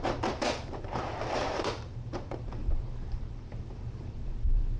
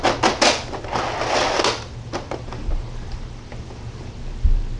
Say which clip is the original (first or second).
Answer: second